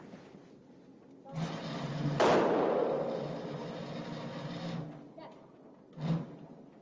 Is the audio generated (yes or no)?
no